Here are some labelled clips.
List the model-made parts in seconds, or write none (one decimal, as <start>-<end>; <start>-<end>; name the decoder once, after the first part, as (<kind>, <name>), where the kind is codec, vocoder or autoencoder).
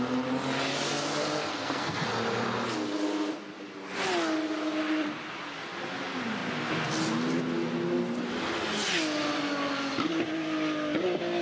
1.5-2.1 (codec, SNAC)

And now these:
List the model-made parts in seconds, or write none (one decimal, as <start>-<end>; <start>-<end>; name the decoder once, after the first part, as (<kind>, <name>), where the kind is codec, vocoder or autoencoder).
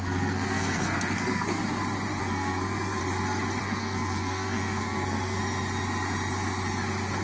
0.0-1.6 (codec, SNAC); 2.2-3.0; 3.6-5.4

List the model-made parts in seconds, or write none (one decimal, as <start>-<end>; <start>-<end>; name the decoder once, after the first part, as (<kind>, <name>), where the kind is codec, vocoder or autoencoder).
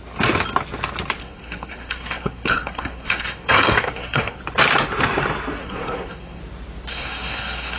1.2-4.4 (codec, SNAC); 5.6-6.4; 6.9-7.8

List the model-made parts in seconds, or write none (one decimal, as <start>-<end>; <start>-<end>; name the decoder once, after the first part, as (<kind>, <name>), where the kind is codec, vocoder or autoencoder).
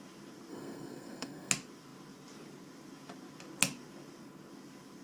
0.5-1.5 (codec, SNAC)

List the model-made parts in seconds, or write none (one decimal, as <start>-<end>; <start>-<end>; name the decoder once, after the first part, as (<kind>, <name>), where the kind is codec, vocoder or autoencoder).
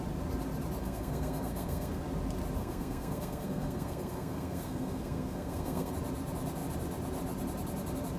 0.8-2.0 (codec, SNAC); 2.6-5.9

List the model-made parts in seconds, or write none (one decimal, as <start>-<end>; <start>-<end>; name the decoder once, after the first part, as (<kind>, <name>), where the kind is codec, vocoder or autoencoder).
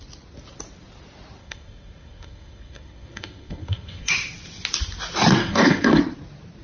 1.4-4.1 (codec, SNAC); 5.4-6.0